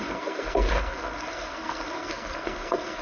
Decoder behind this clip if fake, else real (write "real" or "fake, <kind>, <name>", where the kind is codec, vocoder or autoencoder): fake, codec, SNAC